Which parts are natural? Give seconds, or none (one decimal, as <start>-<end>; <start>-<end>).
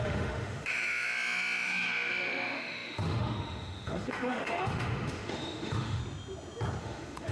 6.0-6.8